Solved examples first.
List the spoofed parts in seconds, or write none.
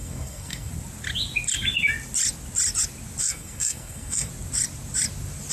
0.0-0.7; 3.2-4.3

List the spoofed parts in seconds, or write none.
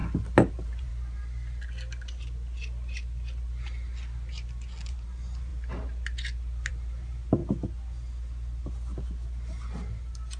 0.5-0.9; 4.9-5.5; 6.7-7.4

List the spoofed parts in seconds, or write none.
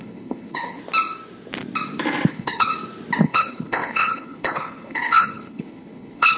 0.0-0.8; 2.3-2.7; 3.2-6.4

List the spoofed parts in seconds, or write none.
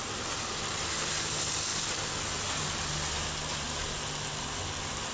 none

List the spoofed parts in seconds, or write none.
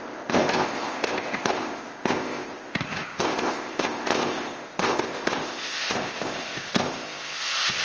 0.0-7.8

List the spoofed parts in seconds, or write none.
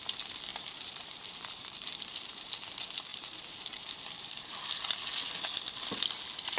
0.5-2.7; 3.1-4.7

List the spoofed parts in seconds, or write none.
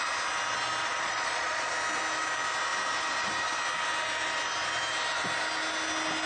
0.8-1.7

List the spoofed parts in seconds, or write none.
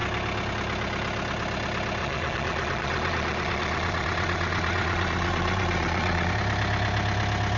2.0-6.3